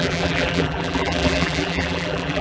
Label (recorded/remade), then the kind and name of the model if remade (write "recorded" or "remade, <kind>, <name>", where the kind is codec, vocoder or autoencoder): remade, vocoder, BigVGAN v2